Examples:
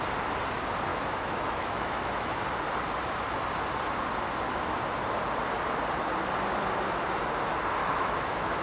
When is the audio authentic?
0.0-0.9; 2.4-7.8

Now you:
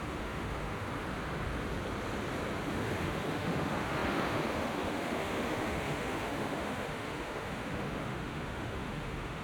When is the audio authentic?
0.9-2.7

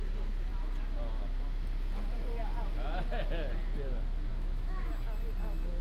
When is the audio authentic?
0.0-4.3; 4.9-5.8